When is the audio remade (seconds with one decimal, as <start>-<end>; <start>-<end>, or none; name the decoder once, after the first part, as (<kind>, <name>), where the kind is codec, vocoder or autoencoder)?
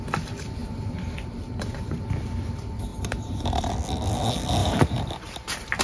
0.6-2.0 (vocoder, BigVGAN v2); 2.9-3.7; 4.6-5.8